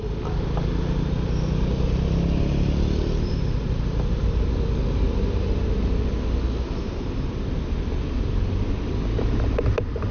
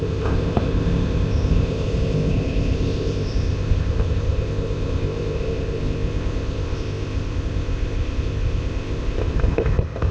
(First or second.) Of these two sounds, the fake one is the second